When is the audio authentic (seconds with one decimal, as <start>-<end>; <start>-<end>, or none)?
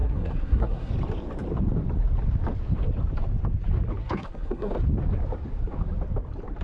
0.9-4.0; 4.7-6.6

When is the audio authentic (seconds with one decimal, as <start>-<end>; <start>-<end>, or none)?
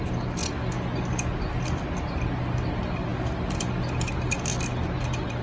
0.0-5.4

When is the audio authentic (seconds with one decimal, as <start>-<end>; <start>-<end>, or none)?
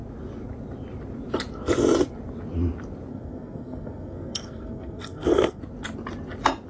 0.0-3.1; 5.6-6.7